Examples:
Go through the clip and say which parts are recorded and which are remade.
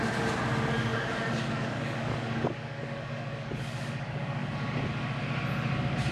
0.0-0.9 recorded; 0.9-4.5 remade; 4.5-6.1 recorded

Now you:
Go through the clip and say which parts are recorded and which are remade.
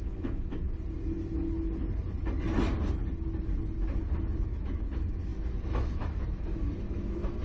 0.0-0.5 remade; 0.5-4.2 recorded; 4.2-7.4 remade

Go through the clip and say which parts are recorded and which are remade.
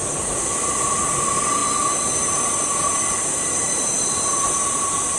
0.0-5.2 recorded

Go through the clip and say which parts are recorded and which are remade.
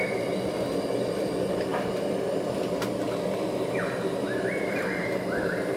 0.0-5.8 recorded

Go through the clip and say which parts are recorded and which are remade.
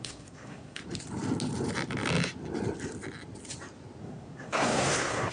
0.0-0.8 remade; 0.8-4.0 recorded; 4.0-5.3 remade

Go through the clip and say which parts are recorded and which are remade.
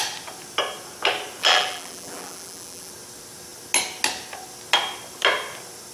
0.0-1.4 recorded; 1.4-2.9 remade; 2.9-5.9 recorded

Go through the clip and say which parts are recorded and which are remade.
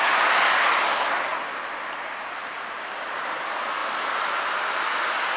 0.0-5.4 recorded